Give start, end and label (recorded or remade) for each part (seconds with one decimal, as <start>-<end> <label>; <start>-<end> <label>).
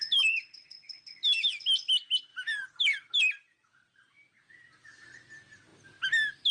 0.0-6.5 recorded